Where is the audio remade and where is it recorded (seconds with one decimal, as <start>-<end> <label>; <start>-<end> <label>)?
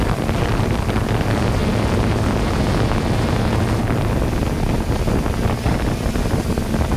0.0-7.0 recorded